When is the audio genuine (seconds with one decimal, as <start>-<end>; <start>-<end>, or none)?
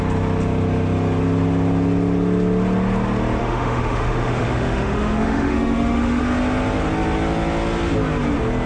0.0-3.4; 6.2-8.7